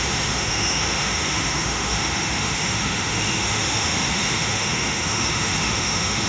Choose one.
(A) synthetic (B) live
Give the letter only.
A